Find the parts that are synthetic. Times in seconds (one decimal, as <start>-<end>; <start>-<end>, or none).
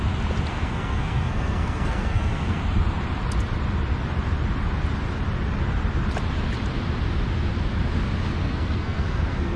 0.5-2.6; 8.4-9.6